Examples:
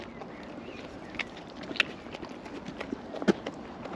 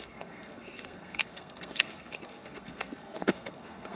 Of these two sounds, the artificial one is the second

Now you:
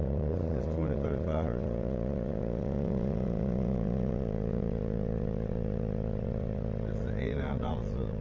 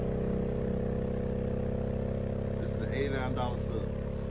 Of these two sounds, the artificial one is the first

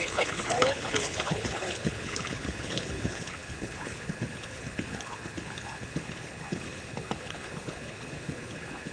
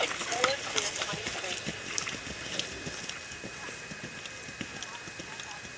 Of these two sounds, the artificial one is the first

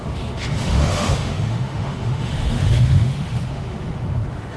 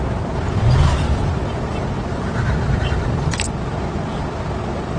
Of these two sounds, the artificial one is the first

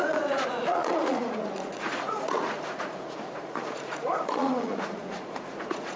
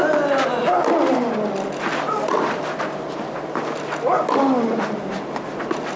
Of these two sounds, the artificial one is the first